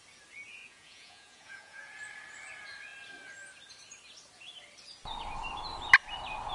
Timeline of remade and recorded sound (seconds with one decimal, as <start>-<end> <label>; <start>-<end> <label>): 0.0-0.6 recorded; 0.6-1.9 remade; 1.9-6.5 recorded

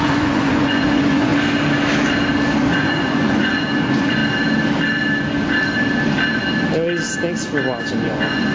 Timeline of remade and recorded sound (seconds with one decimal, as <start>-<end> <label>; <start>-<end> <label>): 0.0-1.3 remade; 1.3-2.7 recorded; 2.7-4.2 remade; 4.2-7.9 recorded; 7.9-8.5 remade

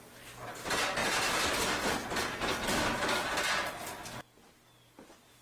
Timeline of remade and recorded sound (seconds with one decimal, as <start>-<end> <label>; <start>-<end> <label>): 0.0-5.4 recorded

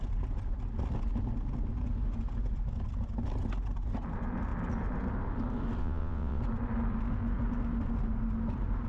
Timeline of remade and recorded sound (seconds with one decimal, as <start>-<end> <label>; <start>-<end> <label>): 0.0-5.8 recorded; 5.8-6.4 remade; 6.4-8.9 recorded